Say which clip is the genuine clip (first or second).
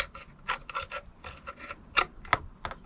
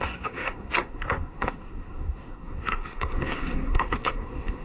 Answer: first